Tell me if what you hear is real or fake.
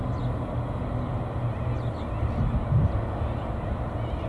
real